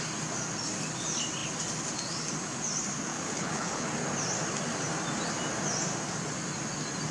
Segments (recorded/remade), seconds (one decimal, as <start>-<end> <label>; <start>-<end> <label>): 0.0-3.1 recorded; 3.1-3.9 remade; 3.9-7.1 recorded